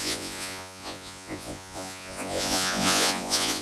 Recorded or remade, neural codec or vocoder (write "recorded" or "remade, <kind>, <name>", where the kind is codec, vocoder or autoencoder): remade, vocoder, Vocos